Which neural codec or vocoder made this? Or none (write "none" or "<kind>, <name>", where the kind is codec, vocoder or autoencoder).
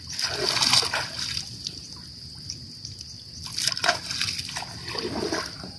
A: none